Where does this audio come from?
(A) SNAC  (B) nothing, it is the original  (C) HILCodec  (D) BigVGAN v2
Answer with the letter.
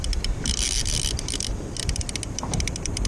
B